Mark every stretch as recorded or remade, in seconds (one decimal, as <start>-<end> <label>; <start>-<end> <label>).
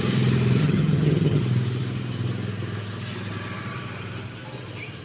0.0-0.6 recorded; 0.6-1.4 remade; 1.4-5.0 recorded